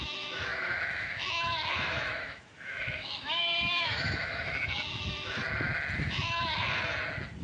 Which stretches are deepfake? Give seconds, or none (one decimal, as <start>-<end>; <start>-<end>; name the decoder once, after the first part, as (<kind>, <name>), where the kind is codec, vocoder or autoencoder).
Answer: 0.0-5.4 (autoencoder, DAC-VAE); 6.0-6.6